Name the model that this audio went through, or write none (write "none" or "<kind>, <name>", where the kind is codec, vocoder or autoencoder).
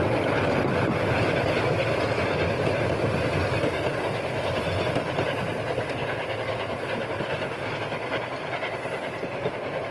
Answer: none